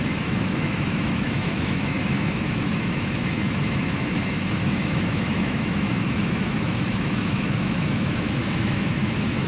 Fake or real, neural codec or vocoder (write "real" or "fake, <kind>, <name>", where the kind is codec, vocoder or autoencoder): fake, autoencoder, DAC-VAE